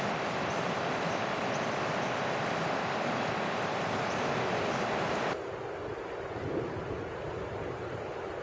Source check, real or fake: real